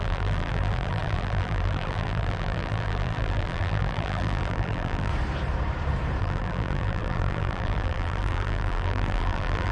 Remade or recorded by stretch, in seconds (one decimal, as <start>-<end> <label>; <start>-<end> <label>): 0.0-5.1 remade; 5.1-6.2 recorded; 6.2-9.7 remade